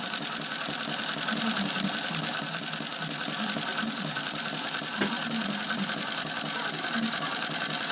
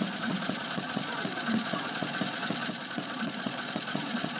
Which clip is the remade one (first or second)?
second